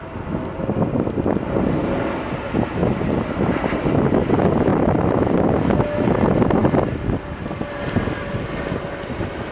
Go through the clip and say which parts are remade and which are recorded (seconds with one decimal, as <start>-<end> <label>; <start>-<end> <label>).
0.0-2.8 recorded; 2.8-3.7 remade; 3.7-4.7 recorded; 4.7-5.5 remade; 5.5-9.5 recorded